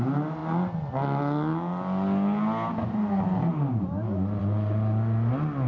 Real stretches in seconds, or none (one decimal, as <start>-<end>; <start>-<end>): 0.0-5.7